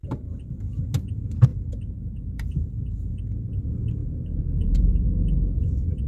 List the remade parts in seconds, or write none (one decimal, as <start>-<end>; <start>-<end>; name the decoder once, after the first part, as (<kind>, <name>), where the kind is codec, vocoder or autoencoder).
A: 0.0-0.7 (vocoder, BigVGAN v2); 1.5-3.1; 4.0-5.0